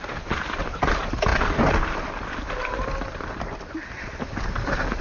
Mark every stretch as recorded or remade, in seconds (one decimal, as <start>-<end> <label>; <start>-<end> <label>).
0.0-5.0 recorded